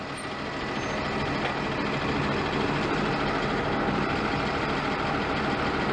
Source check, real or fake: real